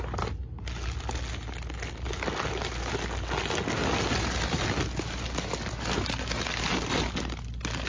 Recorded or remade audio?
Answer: recorded